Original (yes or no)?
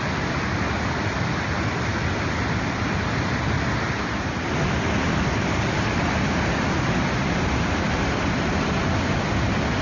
yes